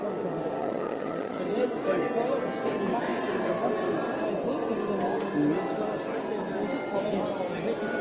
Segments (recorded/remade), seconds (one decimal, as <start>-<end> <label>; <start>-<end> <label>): 0.0-0.6 recorded; 0.6-1.4 remade; 1.4-8.0 recorded